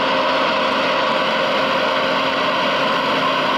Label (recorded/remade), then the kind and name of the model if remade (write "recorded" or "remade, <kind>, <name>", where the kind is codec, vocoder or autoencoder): recorded